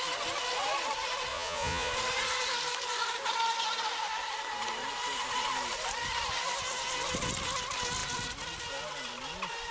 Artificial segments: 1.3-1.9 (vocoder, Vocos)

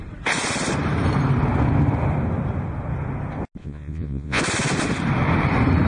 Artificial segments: 3.6-4.4 (vocoder, Vocos)

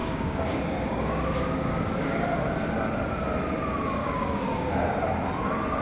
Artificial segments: 0.0-2.5 (codec, DAC); 4.0-4.7

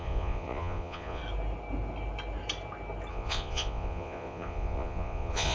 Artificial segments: 0.0-1.2 (vocoder, Vocos); 3.1-5.5

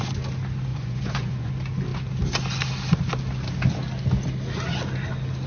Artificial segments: 0.7-1.5 (vocoder, Vocos)

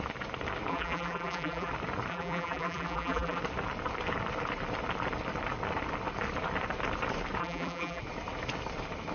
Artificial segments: 0.7-1.7 (vocoder, BigVGAN v2); 2.1-3.4; 7.4-8.0